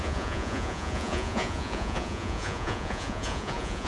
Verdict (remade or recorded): remade